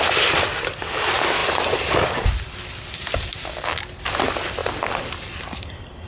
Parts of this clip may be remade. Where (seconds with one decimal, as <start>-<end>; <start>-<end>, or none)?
none